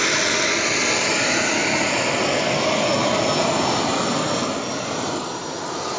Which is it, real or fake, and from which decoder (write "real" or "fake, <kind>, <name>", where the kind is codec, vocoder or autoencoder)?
real